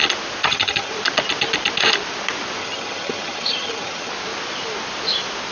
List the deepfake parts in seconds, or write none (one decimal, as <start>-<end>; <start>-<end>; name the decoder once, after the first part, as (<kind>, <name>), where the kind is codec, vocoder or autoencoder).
0.4-0.9 (vocoder, HiFi-GAN); 2.6-4.1